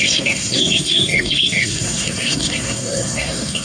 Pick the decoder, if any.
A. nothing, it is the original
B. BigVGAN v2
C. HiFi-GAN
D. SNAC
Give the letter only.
D